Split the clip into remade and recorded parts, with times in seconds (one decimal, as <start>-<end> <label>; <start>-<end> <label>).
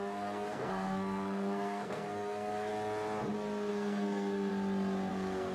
0.0-2.7 remade; 2.7-3.7 recorded; 3.7-4.5 remade; 4.5-5.1 recorded; 5.1-5.5 remade